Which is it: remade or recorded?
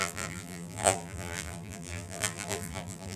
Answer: remade